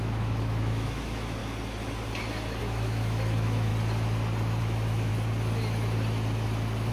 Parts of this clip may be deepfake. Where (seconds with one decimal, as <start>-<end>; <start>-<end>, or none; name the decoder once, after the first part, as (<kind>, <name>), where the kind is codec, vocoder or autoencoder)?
0.0-1.4 (autoencoder, DAC-VAE); 2.6-3.7; 4.6-5.1